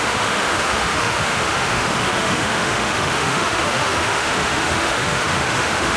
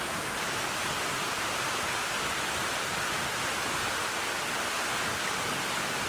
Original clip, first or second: second